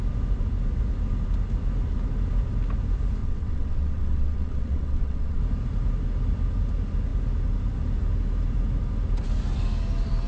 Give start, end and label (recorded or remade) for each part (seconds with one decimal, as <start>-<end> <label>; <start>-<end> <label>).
0.0-3.2 recorded; 3.2-5.4 remade; 5.4-10.3 recorded